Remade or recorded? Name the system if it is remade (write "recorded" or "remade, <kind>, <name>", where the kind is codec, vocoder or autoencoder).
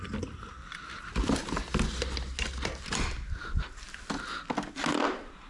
recorded